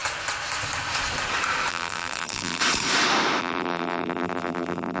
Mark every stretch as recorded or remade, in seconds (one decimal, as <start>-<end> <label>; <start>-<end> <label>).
0.0-1.7 recorded; 1.7-2.6 remade; 2.6-3.4 recorded; 3.4-5.0 remade